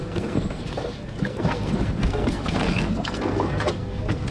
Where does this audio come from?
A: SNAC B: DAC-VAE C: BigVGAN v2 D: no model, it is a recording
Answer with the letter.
A